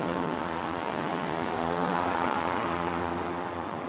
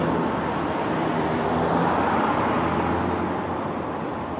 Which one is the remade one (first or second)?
first